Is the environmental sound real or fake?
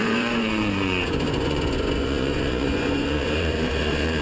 fake